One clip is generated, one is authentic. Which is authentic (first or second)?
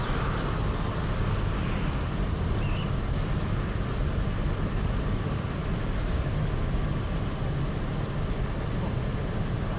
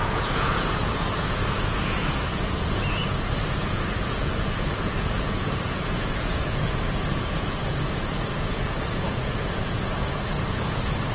first